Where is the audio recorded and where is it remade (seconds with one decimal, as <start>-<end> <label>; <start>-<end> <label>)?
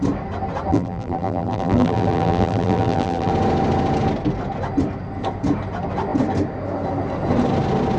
0.0-0.7 recorded; 0.7-3.3 remade; 3.3-8.0 recorded